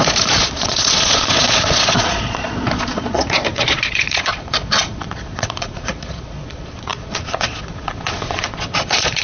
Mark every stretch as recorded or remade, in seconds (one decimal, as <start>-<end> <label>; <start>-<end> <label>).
0.0-9.2 remade